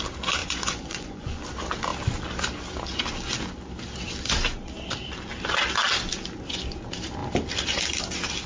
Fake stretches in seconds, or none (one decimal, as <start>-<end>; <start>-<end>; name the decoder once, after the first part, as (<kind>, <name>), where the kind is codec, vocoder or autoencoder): 0.4-1.4 (vocoder, Vocos)